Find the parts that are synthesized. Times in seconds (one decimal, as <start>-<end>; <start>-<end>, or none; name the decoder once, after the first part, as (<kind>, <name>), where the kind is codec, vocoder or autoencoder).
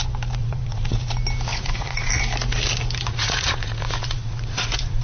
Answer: 0.4-1.1 (vocoder, Vocos); 1.5-2.1; 3.1-5.0